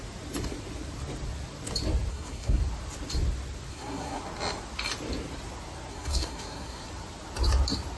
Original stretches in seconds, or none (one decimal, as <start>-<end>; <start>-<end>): 0.0-2.1; 2.6-3.7; 4.2-5.9; 6.8-8.0